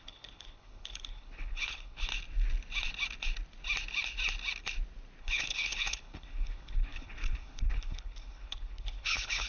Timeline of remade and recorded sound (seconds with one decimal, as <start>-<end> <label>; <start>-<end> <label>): 0.0-2.1 remade; 2.1-5.2 recorded; 5.2-9.5 remade